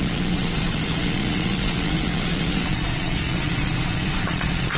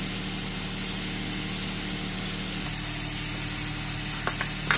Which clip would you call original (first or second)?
second